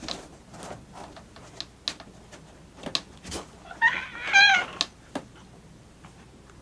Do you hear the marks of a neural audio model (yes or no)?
no